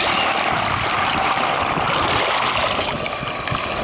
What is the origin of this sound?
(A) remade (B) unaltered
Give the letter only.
B